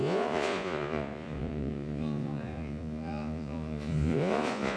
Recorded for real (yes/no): no